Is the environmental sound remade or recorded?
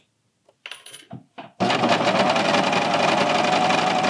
recorded